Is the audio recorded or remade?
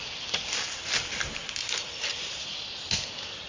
recorded